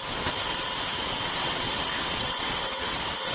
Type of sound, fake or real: fake